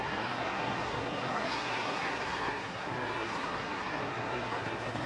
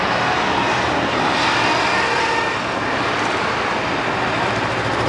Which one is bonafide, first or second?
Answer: second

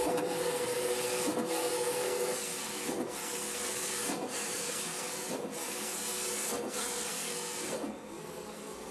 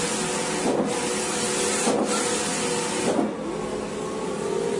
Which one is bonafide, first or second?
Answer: second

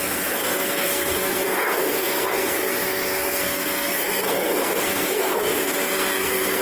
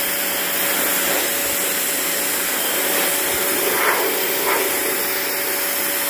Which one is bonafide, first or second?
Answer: second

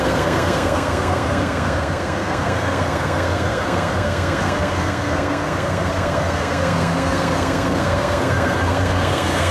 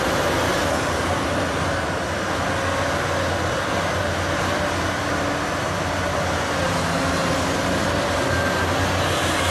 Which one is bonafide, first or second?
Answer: second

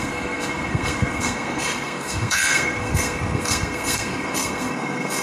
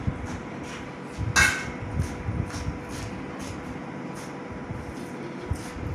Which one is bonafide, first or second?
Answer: second